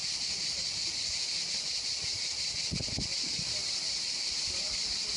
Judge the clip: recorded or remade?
recorded